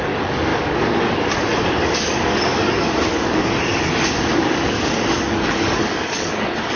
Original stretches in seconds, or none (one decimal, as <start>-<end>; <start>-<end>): none